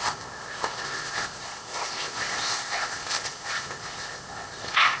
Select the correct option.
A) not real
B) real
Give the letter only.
A